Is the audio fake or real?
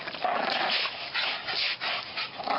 real